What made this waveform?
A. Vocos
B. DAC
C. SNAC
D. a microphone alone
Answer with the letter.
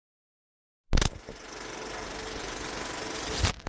D